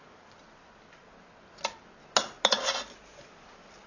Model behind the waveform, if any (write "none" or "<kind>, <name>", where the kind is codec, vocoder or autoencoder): none